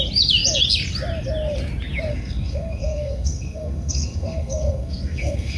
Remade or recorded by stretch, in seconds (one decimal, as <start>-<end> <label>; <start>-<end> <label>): 0.0-2.1 recorded; 2.1-5.6 remade